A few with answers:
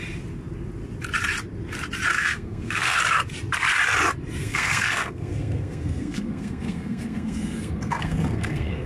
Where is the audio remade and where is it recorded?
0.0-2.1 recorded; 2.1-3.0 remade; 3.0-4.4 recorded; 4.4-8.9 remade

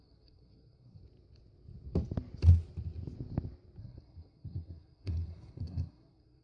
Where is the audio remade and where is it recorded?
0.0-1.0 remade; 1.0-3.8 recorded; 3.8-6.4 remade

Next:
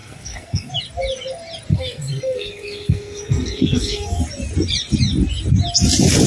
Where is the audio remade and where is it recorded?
0.0-0.7 remade; 0.7-1.7 recorded; 1.7-4.2 remade; 4.2-6.3 recorded